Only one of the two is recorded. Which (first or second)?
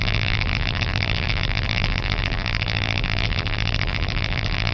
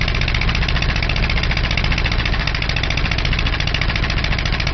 second